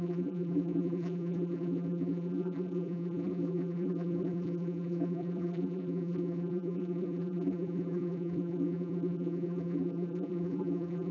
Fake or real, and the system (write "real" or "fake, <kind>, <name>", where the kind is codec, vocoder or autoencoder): fake, vocoder, BigVGAN v2